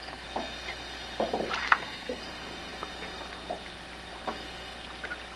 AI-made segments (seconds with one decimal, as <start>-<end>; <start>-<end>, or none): 1.6-2.2